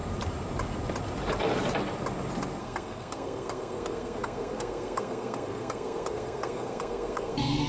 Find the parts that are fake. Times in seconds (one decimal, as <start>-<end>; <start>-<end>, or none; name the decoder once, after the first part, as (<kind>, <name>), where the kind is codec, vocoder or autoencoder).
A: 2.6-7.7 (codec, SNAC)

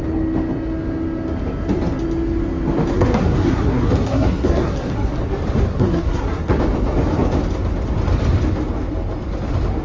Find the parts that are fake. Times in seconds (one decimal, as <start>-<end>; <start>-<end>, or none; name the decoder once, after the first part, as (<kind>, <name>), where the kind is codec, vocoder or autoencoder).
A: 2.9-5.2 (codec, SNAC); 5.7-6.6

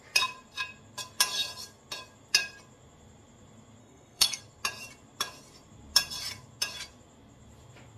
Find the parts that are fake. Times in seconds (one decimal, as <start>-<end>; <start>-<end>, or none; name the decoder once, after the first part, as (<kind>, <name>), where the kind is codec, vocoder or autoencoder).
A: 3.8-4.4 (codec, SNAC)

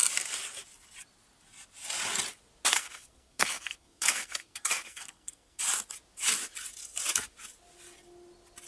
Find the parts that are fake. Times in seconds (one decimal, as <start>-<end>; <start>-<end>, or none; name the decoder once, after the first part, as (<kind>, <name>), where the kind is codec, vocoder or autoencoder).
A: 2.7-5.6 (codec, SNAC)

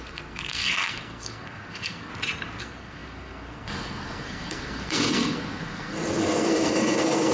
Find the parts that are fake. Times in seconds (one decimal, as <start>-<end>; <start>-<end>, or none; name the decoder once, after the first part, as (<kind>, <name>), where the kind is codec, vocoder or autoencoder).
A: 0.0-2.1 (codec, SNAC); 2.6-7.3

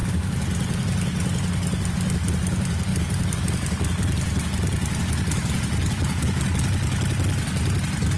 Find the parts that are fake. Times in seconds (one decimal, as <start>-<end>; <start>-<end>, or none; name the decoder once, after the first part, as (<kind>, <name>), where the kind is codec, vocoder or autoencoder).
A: none